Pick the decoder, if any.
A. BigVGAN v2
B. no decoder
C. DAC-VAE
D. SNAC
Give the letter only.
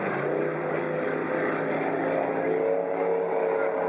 B